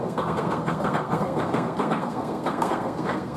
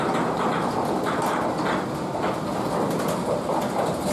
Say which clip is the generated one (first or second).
first